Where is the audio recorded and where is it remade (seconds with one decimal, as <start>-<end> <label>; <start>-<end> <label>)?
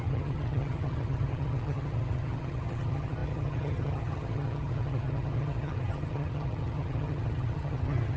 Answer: 0.0-8.2 remade